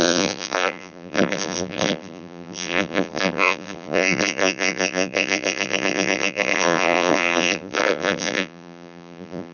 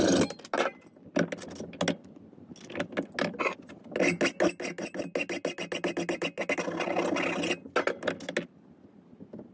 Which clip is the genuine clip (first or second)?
second